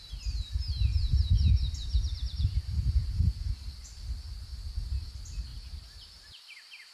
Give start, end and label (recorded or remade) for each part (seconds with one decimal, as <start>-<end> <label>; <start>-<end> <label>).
0.0-1.0 recorded; 1.0-3.2 remade; 3.2-6.9 recorded